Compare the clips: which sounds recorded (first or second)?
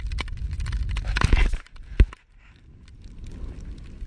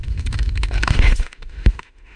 first